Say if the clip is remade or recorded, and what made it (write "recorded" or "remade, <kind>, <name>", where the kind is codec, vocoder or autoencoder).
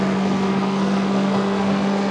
remade, codec, SNAC